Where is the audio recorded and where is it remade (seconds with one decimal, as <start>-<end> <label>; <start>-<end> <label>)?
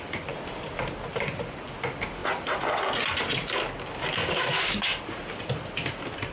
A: 0.0-4.2 recorded; 4.2-5.0 remade; 5.0-6.3 recorded